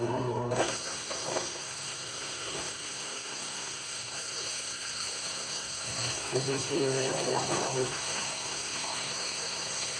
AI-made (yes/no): yes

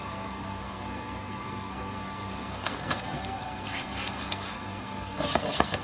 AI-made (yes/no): yes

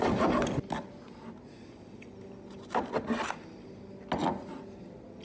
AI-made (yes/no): no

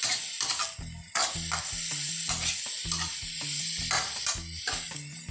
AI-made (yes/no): no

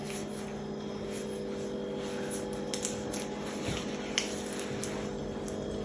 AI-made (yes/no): no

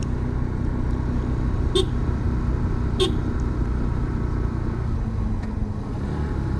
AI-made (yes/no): no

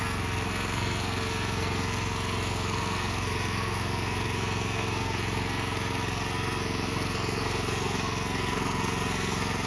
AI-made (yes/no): yes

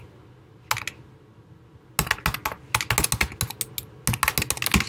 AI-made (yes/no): no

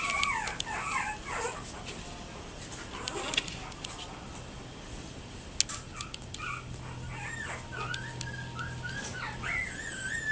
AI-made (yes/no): no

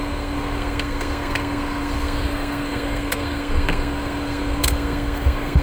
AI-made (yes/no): yes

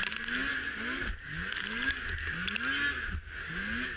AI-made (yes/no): no